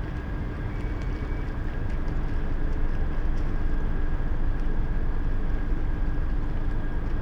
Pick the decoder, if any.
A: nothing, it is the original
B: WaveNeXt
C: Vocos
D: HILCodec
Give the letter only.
A